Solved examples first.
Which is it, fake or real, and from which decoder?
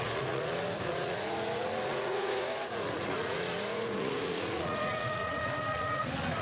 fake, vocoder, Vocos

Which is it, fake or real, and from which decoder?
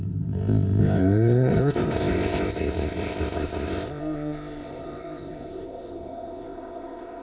fake, codec, ZipCodec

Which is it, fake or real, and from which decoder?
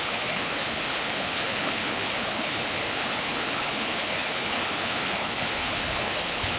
fake, codec, HILCodec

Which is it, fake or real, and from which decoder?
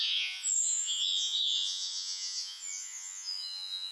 fake, vocoder, Vocos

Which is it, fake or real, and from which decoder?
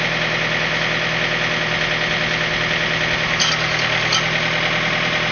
real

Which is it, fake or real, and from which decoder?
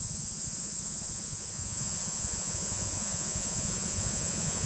fake, vocoder, Vocos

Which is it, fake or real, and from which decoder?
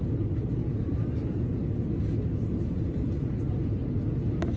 real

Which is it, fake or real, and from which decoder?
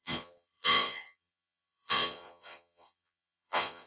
fake, vocoder, Vocos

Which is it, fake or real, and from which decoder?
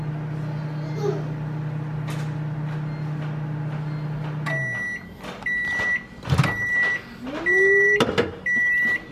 real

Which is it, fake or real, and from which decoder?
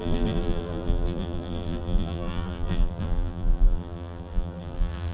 fake, vocoder, BigVGAN v2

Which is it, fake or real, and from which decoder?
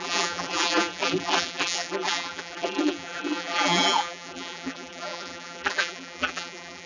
fake, vocoder, BigVGAN v2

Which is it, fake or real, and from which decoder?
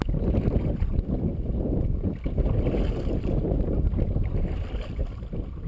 real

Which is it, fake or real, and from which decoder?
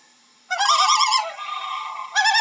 real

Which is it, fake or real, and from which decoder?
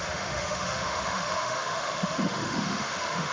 fake, autoencoder, DAC-VAE